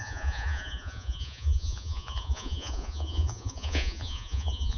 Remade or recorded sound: remade